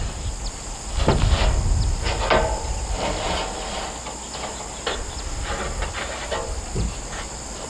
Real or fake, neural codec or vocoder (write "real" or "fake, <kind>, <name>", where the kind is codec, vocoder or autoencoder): real